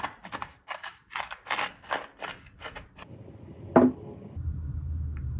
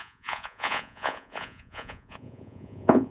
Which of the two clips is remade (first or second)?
second